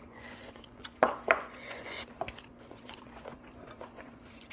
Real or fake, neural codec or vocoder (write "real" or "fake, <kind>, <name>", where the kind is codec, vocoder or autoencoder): fake, vocoder, Vocos